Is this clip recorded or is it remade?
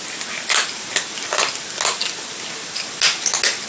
recorded